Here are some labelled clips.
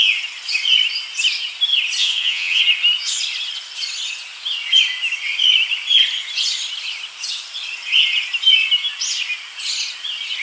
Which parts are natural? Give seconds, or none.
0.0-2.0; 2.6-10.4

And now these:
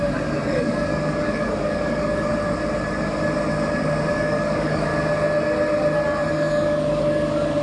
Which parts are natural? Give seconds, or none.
2.3-4.1; 4.9-6.3

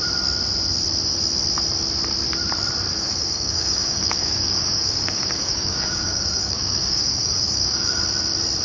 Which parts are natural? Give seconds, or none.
0.0-2.9; 8.0-8.6